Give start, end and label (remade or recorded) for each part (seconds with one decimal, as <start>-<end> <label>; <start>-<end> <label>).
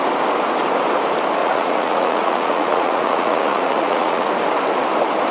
0.0-1.4 recorded; 1.4-4.3 remade; 4.3-5.3 recorded